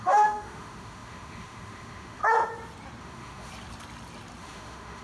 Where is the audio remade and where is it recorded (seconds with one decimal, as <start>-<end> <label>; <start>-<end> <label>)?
0.0-2.2 remade; 2.2-3.0 recorded; 3.0-3.5 remade; 3.5-4.4 recorded; 4.4-5.0 remade